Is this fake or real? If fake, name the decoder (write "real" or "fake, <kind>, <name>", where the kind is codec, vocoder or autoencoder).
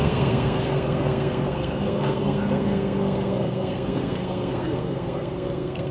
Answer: fake, codec, SNAC